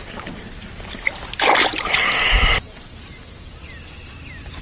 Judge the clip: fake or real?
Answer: real